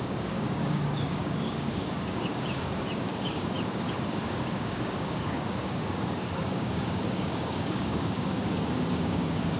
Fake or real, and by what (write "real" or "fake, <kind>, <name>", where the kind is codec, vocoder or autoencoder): fake, codec, DAC